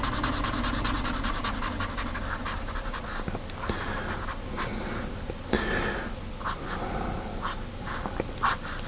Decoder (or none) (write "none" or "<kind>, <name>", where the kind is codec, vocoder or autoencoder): none